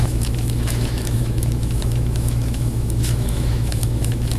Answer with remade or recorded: remade